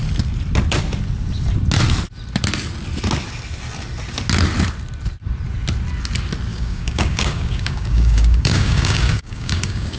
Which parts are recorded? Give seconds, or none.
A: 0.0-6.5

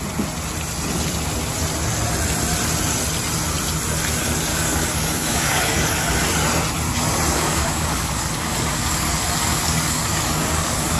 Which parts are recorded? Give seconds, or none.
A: 0.0-4.5; 6.0-7.3